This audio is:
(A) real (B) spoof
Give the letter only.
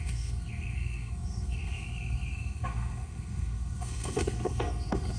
B